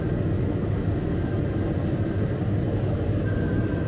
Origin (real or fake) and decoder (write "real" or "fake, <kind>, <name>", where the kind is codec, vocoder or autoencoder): real